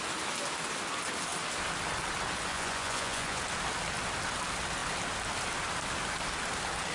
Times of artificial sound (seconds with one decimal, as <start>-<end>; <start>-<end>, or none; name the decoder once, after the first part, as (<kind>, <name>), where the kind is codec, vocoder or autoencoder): 2.5-3.4 (vocoder, Vocos)